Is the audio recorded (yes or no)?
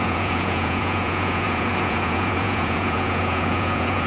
no